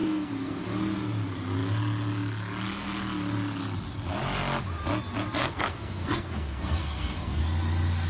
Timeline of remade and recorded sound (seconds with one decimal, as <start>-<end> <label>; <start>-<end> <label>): 0.0-0.6 remade; 0.6-5.4 recorded; 5.4-7.4 remade; 7.4-8.1 recorded